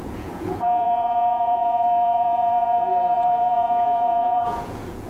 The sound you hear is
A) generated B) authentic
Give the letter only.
A